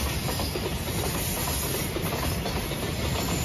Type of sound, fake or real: real